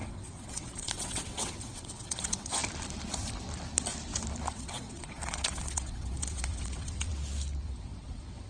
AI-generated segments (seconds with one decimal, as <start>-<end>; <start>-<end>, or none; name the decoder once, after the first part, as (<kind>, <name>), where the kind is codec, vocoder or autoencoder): 0.0-2.6 (vocoder, WaveNeXt); 4.5-7.1; 7.6-8.5